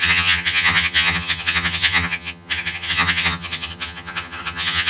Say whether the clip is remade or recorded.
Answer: remade